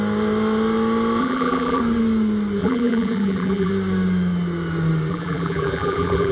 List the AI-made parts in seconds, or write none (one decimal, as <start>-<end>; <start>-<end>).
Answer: 1.2-1.8; 2.6-3.7; 5.1-6.3